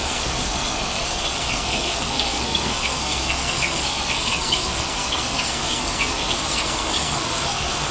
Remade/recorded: remade